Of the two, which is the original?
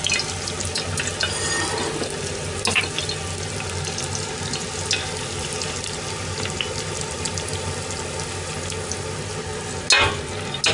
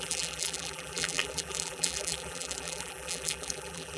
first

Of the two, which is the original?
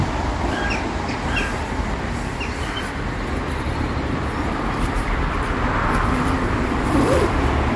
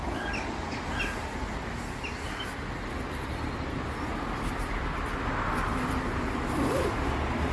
second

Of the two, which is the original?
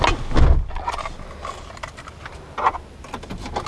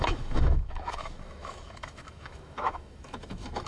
first